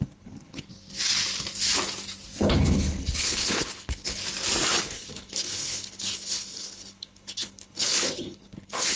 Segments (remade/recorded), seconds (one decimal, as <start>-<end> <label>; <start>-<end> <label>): 0.0-0.7 remade; 0.7-2.4 recorded; 2.4-4.2 remade; 4.2-4.8 recorded; 4.8-9.0 remade